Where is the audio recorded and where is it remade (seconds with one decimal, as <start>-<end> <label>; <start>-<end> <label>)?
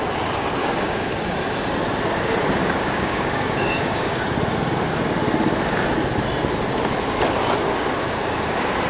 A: 0.0-0.6 recorded; 0.6-1.1 remade; 1.1-2.6 recorded; 2.6-4.3 remade; 4.3-8.9 recorded